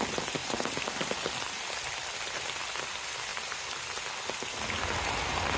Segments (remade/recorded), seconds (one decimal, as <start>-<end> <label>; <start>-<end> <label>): 0.0-3.3 recorded; 3.3-3.8 remade; 3.8-5.6 recorded